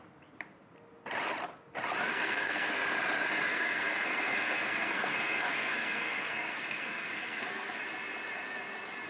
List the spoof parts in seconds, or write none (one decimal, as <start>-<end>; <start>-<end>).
2.1-2.7; 3.5-7.8